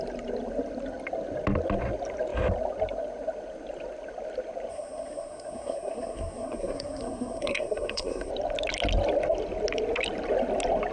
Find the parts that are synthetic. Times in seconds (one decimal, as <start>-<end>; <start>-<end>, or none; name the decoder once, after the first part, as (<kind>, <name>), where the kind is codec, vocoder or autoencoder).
4.7-8.3 (codec, SNAC)